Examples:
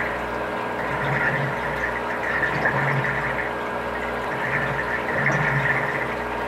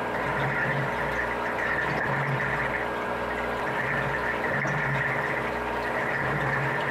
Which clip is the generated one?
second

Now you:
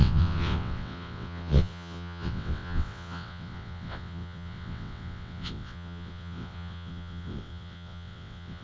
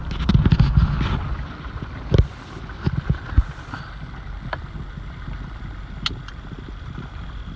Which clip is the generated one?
first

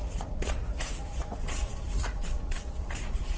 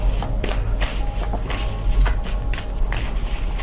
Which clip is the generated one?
first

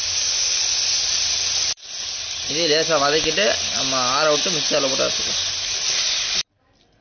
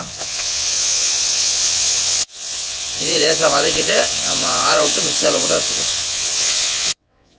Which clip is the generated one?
second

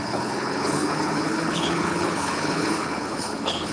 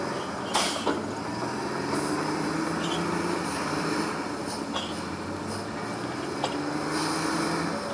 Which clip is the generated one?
first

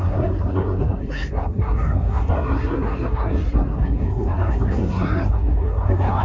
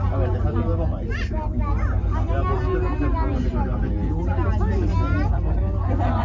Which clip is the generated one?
first